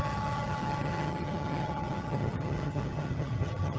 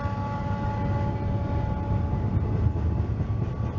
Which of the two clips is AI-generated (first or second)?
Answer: first